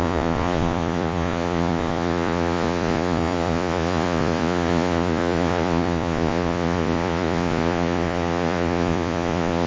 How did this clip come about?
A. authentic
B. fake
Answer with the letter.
B